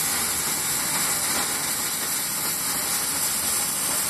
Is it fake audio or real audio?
real